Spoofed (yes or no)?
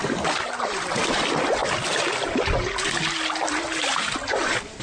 no